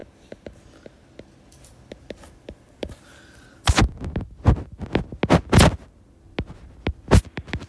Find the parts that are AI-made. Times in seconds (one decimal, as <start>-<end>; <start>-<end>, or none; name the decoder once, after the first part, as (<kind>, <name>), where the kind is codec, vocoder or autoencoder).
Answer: none